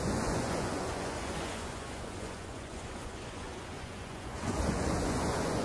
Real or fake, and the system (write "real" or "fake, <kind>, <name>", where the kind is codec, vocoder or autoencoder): fake, vocoder, Vocos